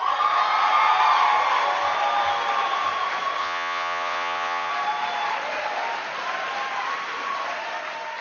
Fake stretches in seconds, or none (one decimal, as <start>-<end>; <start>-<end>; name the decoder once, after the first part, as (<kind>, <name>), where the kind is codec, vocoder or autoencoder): 3.4-4.7 (vocoder, WaveNeXt)

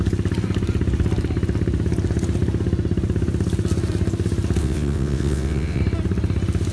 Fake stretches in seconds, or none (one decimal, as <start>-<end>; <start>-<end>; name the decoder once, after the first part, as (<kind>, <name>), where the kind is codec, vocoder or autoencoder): 4.6-5.8 (vocoder, WaveNeXt)

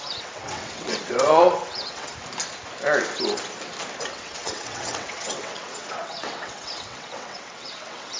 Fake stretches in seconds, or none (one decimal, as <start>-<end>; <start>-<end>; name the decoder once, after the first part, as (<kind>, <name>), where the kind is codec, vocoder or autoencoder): 0.0-2.1 (vocoder, WaveNeXt); 4.1-8.2

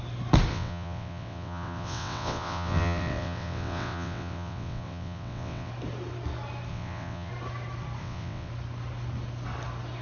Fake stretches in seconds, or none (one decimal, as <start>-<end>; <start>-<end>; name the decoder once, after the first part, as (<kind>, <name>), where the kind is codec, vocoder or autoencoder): 0.5-5.7 (vocoder, WaveNeXt); 6.7-7.3; 8.0-8.5

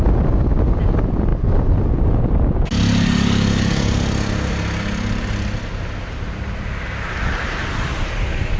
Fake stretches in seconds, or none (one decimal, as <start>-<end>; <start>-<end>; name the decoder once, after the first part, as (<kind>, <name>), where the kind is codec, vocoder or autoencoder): none

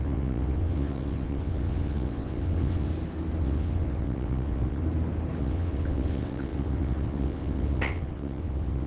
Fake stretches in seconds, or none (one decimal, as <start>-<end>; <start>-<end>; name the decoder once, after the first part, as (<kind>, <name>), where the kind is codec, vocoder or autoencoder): 0.0-2.9 (vocoder, WaveNeXt); 3.4-4.8; 5.4-8.9